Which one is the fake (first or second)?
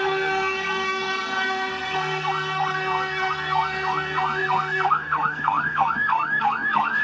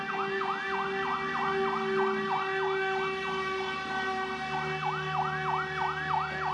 first